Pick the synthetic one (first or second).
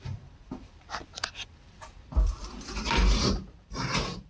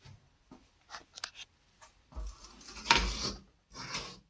first